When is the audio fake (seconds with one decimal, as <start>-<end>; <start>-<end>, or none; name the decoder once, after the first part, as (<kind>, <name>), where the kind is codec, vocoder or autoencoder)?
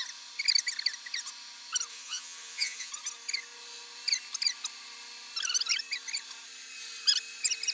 1.9-2.9 (vocoder, HiFi-GAN)